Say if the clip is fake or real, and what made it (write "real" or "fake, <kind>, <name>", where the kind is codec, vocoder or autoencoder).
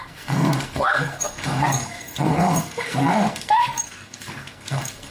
fake, codec, SNAC